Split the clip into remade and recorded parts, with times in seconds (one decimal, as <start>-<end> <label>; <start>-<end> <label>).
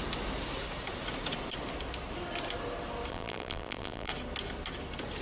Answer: 0.0-3.1 recorded; 3.1-4.1 remade; 4.1-5.2 recorded